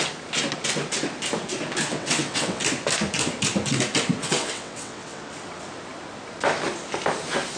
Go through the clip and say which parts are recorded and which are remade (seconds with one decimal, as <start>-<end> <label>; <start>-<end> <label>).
0.0-1.9 recorded; 1.9-2.6 remade; 2.6-4.2 recorded; 4.2-5.3 remade; 5.3-7.6 recorded